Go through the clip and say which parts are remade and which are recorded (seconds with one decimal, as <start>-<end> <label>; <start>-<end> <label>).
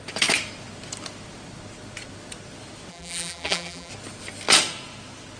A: 0.0-2.9 recorded; 2.9-3.9 remade; 3.9-5.4 recorded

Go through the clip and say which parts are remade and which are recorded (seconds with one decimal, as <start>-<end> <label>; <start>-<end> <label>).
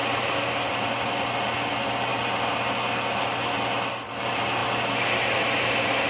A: 0.0-6.1 recorded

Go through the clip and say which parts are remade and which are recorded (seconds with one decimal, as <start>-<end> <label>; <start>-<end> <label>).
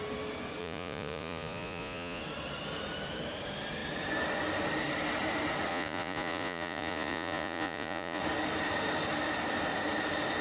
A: 0.0-0.6 recorded; 0.6-2.2 remade; 2.2-5.7 recorded; 5.7-8.2 remade; 8.2-10.4 recorded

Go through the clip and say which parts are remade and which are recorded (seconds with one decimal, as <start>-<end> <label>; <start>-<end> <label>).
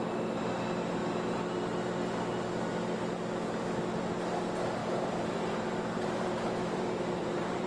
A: 0.0-4.8 recorded; 4.8-7.7 remade